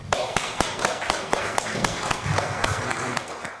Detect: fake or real fake